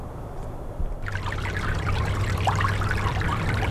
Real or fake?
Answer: fake